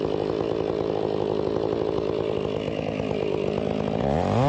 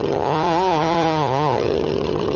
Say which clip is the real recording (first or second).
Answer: first